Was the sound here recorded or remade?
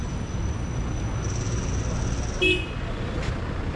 recorded